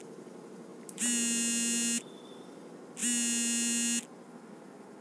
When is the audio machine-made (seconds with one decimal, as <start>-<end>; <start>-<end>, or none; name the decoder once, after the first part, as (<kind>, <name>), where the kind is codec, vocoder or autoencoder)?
none